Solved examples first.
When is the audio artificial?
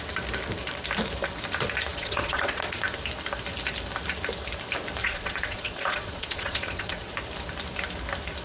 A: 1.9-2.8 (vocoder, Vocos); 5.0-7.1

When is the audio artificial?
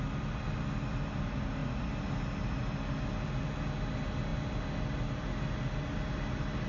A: none